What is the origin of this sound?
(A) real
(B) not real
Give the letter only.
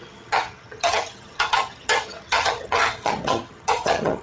B